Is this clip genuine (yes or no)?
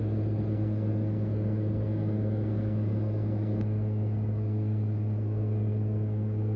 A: no